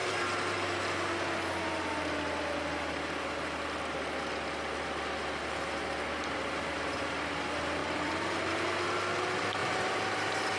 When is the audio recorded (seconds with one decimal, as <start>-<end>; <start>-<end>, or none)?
0.8-7.8; 8.8-9.6